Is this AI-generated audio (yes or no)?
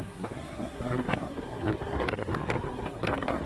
yes